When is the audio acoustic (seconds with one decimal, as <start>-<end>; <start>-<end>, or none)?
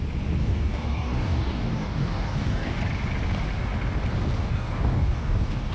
0.0-0.4; 2.8-4.4